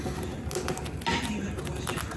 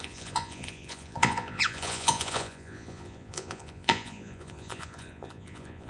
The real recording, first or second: first